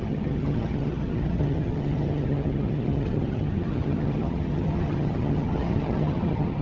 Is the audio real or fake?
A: fake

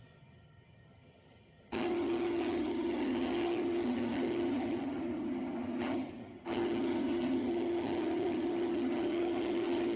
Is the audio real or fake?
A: fake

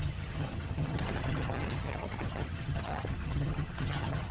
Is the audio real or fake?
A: fake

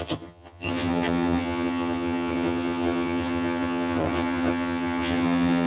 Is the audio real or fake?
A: fake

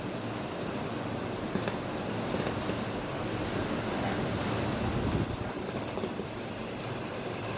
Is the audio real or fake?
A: real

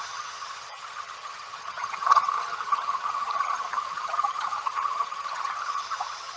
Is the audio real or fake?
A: fake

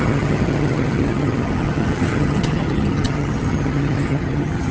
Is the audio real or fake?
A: fake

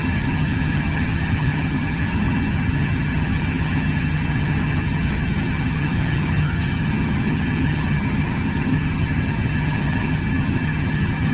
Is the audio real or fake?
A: fake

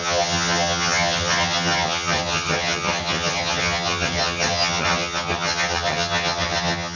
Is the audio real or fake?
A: fake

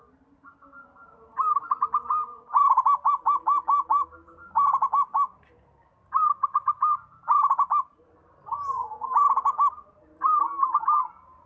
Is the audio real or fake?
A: real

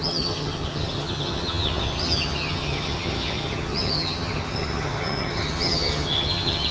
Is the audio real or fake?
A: fake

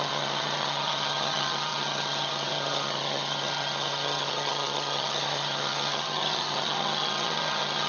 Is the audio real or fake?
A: fake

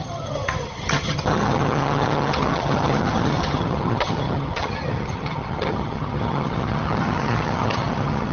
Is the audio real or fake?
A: fake